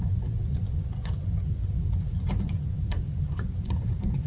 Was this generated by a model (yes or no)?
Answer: yes